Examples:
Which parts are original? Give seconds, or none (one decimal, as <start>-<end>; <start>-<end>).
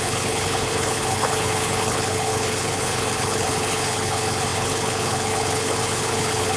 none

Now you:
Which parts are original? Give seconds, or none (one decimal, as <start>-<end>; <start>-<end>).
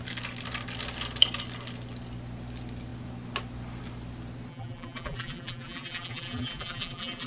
0.0-4.5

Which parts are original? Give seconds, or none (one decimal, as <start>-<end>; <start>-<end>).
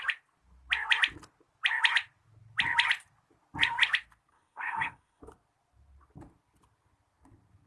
0.0-4.3; 5.2-7.7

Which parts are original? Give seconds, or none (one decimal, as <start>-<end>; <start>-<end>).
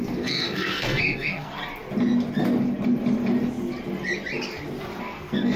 1.6-5.0